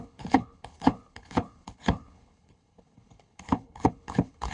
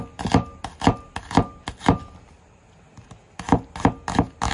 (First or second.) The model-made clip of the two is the first